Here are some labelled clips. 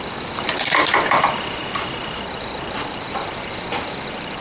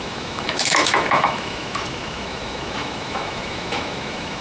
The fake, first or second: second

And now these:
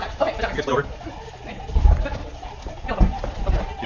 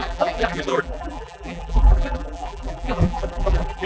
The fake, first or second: second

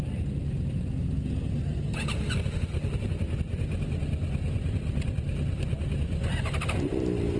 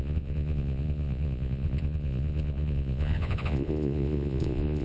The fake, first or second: second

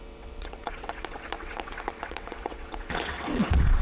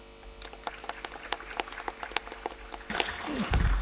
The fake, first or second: first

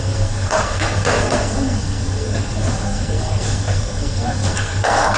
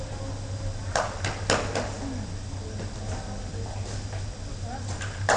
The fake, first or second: first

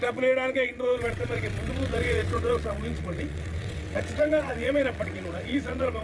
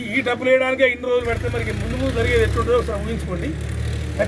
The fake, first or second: first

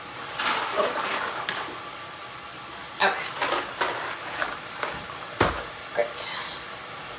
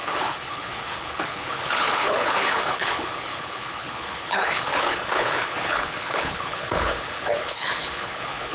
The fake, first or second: second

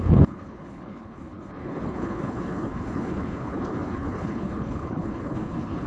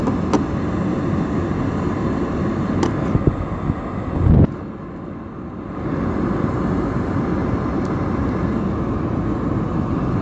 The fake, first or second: first